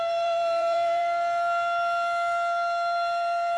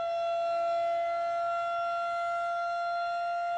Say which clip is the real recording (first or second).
second